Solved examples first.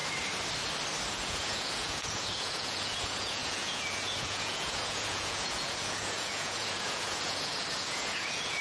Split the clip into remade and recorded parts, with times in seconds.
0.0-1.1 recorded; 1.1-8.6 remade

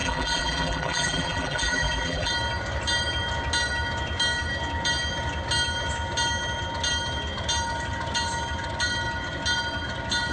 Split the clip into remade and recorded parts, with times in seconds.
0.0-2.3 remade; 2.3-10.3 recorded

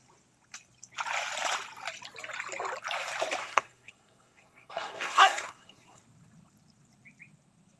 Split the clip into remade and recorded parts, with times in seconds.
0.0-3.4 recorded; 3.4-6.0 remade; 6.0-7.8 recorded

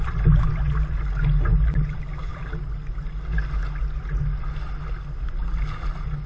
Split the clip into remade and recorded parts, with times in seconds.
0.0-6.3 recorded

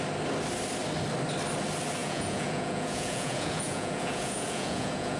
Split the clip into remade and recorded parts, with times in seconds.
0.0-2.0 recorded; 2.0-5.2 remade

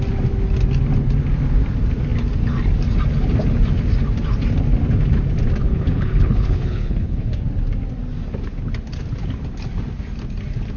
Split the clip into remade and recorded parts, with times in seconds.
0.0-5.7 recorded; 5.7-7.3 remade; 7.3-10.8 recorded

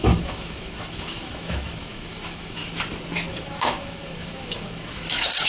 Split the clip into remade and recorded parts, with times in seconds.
0.0-2.6 remade; 2.6-3.3 recorded; 3.3-5.5 remade